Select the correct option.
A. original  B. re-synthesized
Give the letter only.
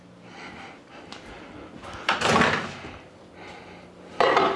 A